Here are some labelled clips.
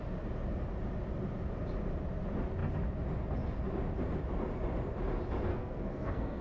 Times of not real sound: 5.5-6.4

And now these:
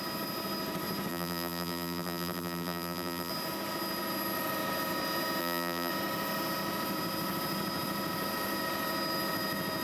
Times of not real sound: 1.1-3.3; 5.4-5.9

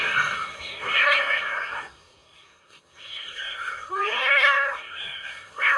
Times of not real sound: 0.0-5.8

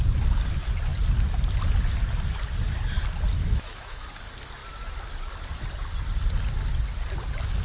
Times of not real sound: 3.4-4.1

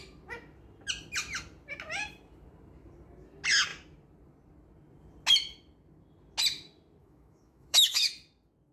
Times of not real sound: 7.0-8.1

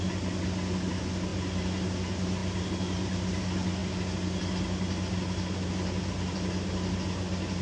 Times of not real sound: none

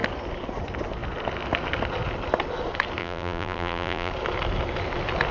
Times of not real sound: 3.0-4.1

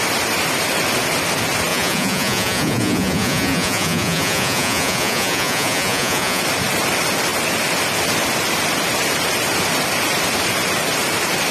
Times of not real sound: 1.7-6.4